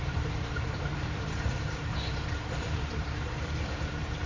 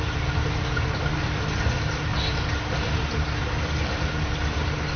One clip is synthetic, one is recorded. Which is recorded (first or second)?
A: second